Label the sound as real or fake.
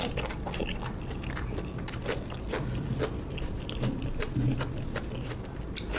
real